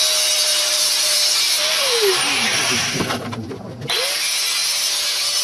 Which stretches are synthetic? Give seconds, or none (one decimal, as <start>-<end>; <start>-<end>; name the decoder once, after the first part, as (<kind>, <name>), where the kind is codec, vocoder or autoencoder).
0.5-3.7 (vocoder, BigVGAN v2); 4.6-5.4